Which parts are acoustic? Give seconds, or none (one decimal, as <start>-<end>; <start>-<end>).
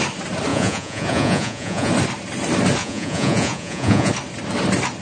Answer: 0.0-0.5; 1.9-2.8; 4.1-5.0